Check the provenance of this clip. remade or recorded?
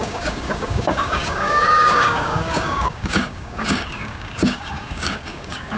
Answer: remade